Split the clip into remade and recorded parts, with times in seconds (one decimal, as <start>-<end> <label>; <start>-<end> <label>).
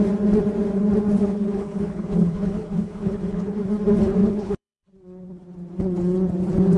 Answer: 0.0-1.2 recorded; 1.2-3.6 remade; 3.6-4.2 recorded; 4.2-4.9 remade; 4.9-6.8 recorded